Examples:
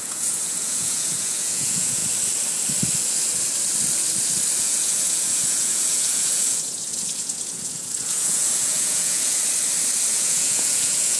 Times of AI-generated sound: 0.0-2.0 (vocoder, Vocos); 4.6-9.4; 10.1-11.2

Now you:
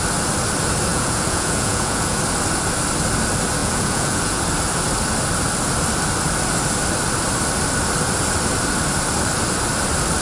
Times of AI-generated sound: 0.9-2.2 (vocoder, Vocos); 3.6-4.4

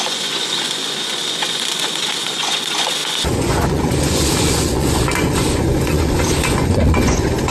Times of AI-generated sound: 0.0-7.5 (vocoder, Vocos)

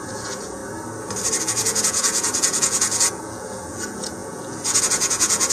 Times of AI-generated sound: 0.0-0.6 (vocoder, Vocos); 1.4-5.5

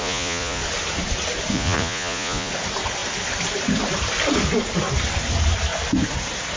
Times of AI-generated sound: 0.0-0.6 (vocoder, Vocos); 1.5-2.5

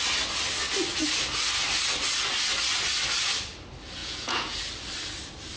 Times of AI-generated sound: 4.0-4.6 (vocoder, Vocos)

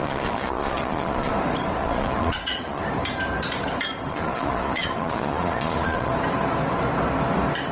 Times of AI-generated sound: 0.0-1.3 (vocoder, Vocos); 1.8-2.8; 4.1-6.1

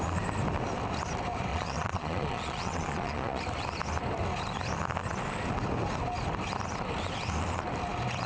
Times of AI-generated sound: 1.5-3.4 (vocoder, Vocos)